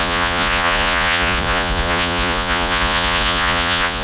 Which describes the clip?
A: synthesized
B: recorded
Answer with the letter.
A